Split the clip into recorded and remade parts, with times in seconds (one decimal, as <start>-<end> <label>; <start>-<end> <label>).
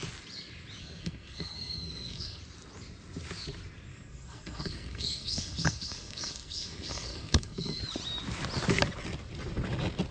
0.0-0.8 recorded; 0.8-2.4 remade; 2.4-3.9 recorded; 3.9-7.8 remade; 7.8-10.1 recorded